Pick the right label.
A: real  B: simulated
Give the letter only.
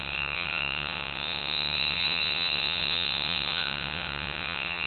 B